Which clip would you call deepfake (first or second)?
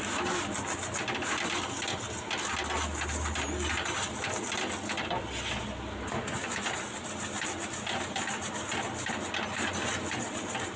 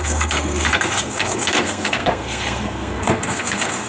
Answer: second